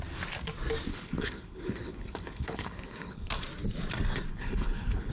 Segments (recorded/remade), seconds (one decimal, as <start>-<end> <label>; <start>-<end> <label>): 0.0-0.9 recorded; 0.9-3.3 remade; 3.3-4.3 recorded; 4.3-5.1 remade